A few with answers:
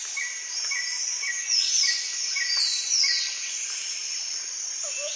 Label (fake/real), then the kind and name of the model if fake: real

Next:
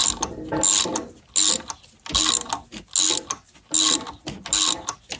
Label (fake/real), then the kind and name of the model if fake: real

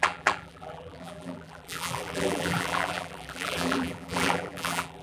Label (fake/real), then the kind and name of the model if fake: fake, vocoder, BigVGAN v2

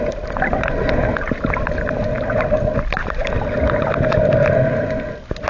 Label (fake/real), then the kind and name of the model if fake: real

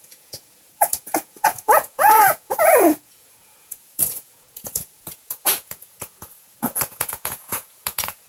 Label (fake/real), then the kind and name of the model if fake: fake, vocoder, Vocos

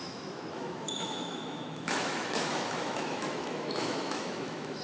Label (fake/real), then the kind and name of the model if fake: fake, autoencoder, DAC-VAE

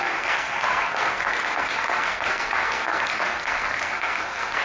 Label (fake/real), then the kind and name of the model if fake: fake, codec, SNAC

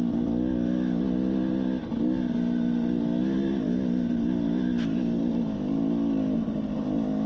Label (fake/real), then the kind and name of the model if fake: real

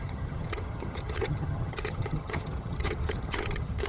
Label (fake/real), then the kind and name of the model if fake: fake, vocoder, HiFi-GAN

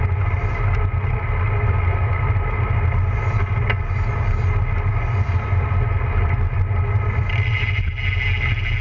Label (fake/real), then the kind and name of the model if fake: real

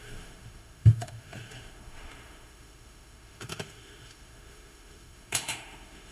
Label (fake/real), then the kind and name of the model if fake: fake, autoencoder, DAC-VAE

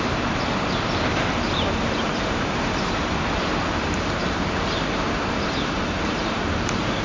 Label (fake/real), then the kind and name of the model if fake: fake, vocoder, BigVGAN v2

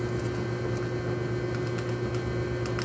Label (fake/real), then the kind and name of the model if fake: real